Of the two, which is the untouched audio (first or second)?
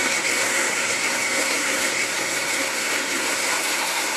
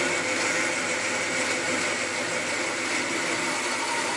second